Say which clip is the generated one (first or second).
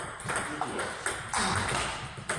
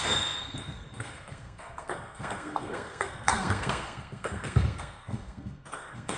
second